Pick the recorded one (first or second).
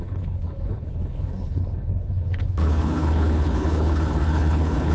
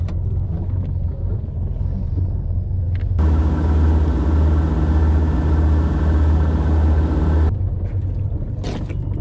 second